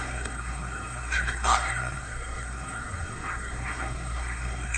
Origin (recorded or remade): remade